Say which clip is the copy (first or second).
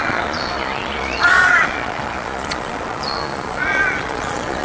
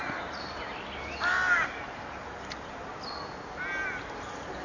first